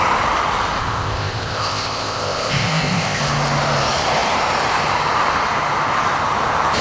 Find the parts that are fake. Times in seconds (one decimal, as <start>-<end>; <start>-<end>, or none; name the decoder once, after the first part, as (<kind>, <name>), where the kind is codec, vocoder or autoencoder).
0.8-3.2 (codec, ZipCodec)